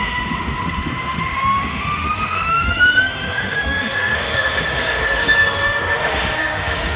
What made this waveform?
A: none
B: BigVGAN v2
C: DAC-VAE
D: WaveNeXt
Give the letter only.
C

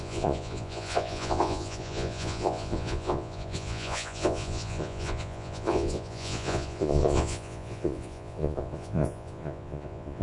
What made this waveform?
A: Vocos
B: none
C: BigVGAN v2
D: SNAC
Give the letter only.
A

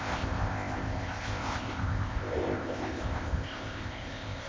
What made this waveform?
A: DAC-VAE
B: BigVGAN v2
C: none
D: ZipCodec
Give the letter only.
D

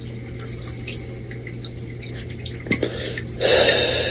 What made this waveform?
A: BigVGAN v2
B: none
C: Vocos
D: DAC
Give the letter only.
B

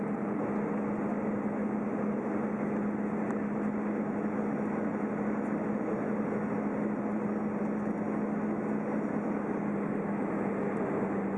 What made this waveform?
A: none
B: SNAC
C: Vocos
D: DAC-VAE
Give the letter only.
A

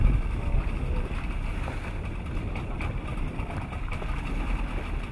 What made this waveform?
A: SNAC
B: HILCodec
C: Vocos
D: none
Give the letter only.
D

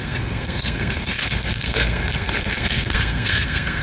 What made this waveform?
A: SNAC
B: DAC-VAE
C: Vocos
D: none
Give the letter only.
A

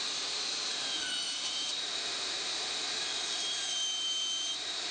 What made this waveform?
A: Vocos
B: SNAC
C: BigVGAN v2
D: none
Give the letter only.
C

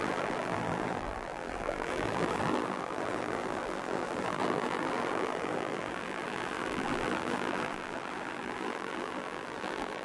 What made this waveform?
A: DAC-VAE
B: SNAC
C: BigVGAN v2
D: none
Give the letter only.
C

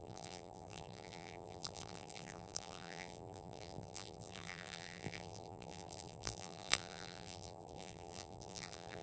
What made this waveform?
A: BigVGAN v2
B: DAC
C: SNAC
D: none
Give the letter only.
A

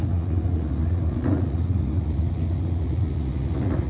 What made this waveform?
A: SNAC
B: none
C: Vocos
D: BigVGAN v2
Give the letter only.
C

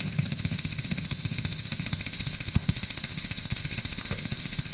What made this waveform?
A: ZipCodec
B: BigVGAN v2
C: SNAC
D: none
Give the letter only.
A